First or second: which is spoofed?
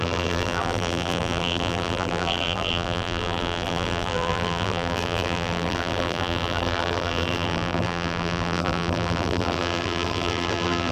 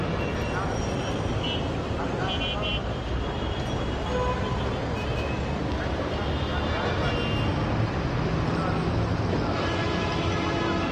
first